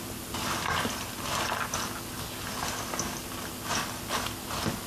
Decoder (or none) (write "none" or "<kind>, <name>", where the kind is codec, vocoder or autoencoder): none